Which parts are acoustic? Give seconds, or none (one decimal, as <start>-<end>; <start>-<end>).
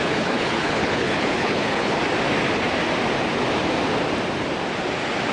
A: 2.0-5.3